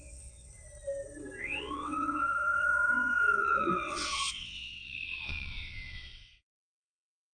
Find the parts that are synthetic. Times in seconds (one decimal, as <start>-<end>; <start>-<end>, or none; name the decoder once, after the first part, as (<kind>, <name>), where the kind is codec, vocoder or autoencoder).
0.0-0.5 (vocoder, WaveNeXt); 1.4-7.3